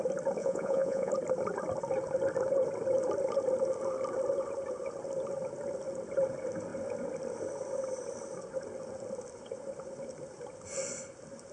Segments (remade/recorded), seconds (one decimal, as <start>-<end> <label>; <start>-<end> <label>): 0.0-0.4 recorded; 0.4-1.1 remade; 1.1-11.5 recorded